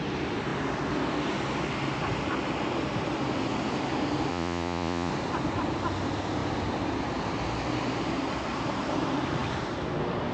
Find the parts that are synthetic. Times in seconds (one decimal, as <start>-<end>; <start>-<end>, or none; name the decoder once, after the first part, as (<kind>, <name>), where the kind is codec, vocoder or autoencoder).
4.3-5.1 (vocoder, Vocos)